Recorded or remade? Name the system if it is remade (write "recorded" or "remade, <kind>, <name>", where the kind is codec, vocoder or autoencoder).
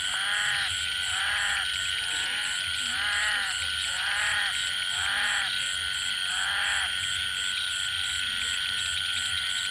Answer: recorded